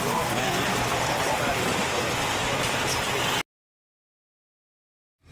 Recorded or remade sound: recorded